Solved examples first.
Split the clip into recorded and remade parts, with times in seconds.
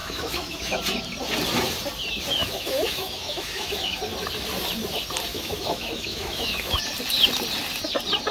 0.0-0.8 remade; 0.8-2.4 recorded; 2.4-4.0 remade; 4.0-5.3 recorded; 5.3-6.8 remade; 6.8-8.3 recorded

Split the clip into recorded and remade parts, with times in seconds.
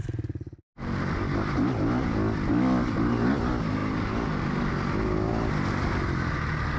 0.0-6.8 recorded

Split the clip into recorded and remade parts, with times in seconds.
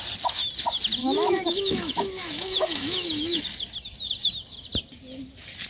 0.0-1.0 recorded; 1.0-3.4 remade; 3.4-5.7 recorded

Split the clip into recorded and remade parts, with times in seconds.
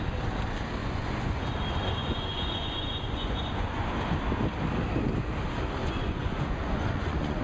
0.0-0.8 recorded; 0.8-1.5 remade; 1.5-2.0 recorded; 2.0-3.9 remade; 3.9-5.8 recorded; 5.8-7.4 remade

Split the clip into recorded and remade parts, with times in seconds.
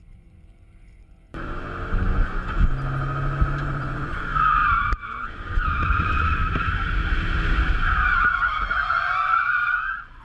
0.0-2.7 remade; 2.7-3.7 recorded; 3.7-4.6 remade; 4.6-5.3 recorded; 5.3-6.4 remade; 6.4-8.6 recorded; 8.6-10.2 remade